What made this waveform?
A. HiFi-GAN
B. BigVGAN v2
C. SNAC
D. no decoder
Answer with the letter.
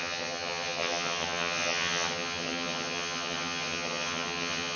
A